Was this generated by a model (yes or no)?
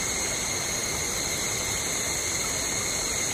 no